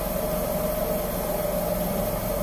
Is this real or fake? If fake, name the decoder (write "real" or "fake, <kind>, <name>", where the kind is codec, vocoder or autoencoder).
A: real